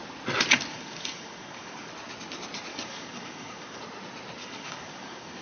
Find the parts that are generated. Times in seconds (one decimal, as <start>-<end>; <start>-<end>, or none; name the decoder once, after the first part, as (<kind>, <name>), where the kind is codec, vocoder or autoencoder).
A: 0.7-1.9 (codec, DAC); 2.7-3.8; 4.4-5.4